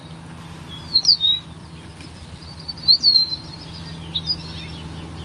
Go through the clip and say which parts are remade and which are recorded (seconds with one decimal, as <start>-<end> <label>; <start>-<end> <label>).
0.0-1.6 recorded; 1.6-3.8 remade; 3.8-5.2 recorded